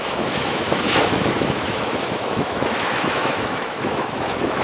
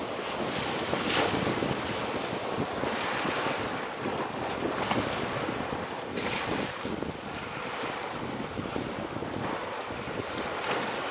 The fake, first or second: first